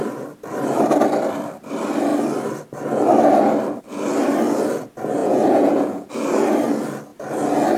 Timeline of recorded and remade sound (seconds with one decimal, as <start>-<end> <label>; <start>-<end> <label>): 0.0-5.2 recorded; 5.2-6.1 remade; 6.1-7.8 recorded